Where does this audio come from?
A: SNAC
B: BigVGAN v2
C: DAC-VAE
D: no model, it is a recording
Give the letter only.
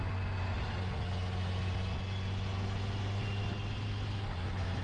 D